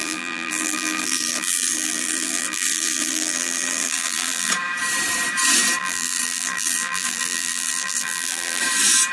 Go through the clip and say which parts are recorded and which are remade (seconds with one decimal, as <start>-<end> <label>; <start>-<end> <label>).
0.0-4.5 remade; 4.5-5.8 recorded; 5.8-8.6 remade; 8.6-9.1 recorded